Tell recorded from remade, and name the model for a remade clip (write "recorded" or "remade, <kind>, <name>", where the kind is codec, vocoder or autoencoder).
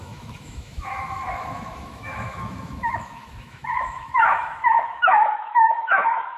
remade, autoencoder, DAC-VAE